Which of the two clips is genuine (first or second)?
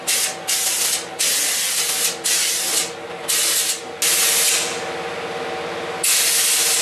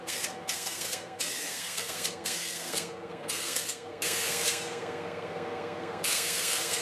first